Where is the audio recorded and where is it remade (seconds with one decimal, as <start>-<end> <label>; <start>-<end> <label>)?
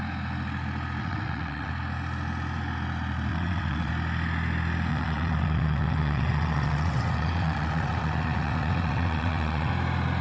0.0-1.0 recorded; 1.0-1.7 remade; 1.7-3.3 recorded; 3.3-3.9 remade; 3.9-4.9 recorded; 4.9-9.7 remade; 9.7-10.2 recorded